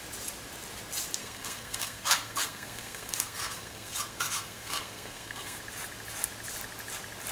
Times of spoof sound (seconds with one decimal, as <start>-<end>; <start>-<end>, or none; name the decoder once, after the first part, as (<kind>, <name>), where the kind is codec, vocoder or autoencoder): 1.2-5.6 (codec, SNAC)